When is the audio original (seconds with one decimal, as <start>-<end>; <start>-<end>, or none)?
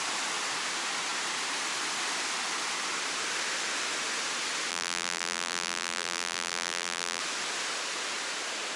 0.0-4.7; 7.2-8.8